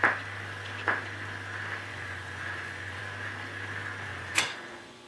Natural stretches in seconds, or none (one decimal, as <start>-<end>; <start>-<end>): 0.0-1.9; 3.0-4.1